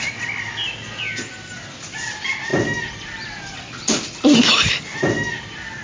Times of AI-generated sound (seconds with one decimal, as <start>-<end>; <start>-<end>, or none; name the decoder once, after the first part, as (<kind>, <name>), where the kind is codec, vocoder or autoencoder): none